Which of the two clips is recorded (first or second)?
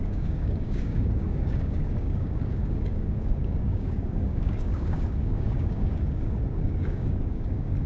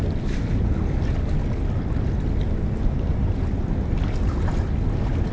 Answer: second